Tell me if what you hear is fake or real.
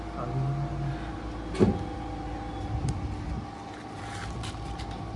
real